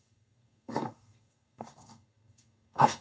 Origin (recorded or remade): remade